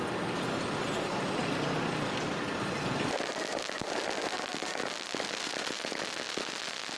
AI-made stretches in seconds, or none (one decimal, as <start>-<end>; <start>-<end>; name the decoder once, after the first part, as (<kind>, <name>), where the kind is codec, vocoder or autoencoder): none